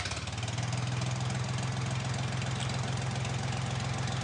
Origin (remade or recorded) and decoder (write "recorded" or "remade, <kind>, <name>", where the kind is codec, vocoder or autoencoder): recorded